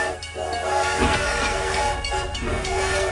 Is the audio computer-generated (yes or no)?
yes